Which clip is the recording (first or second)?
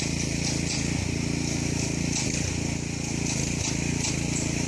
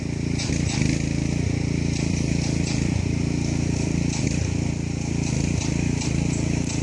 first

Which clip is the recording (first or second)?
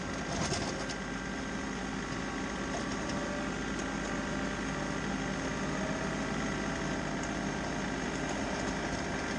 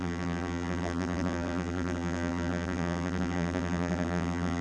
first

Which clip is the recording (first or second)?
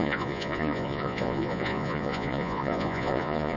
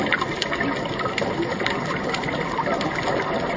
second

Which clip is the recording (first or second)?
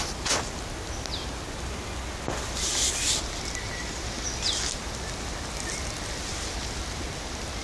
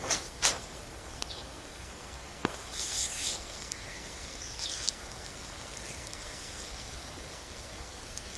first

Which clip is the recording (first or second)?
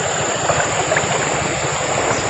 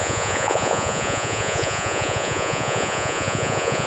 first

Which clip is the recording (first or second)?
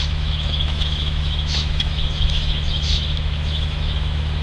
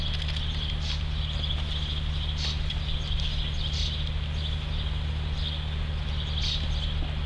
second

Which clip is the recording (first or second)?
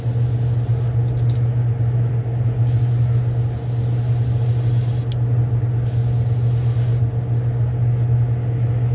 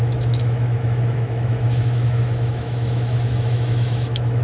first